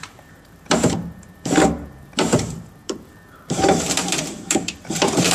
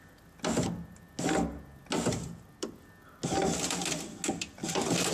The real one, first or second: second